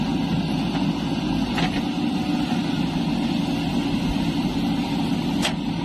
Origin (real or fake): real